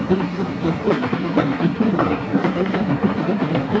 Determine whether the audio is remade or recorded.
remade